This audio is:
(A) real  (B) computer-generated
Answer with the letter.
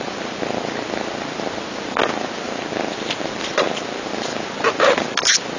A